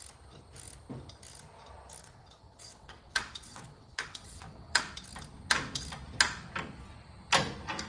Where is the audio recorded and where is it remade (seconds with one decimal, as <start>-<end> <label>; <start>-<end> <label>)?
0.0-2.0 recorded; 2.0-4.8 remade; 4.8-7.9 recorded